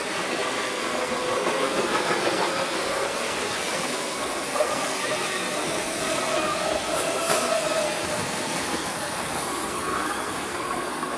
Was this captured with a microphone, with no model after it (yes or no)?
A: no